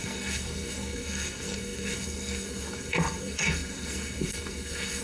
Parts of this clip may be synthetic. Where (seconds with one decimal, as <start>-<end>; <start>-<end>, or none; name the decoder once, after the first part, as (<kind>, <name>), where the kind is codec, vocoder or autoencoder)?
0.0-5.0 (codec, SNAC)